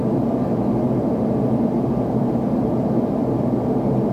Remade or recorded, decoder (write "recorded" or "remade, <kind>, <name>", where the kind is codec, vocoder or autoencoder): recorded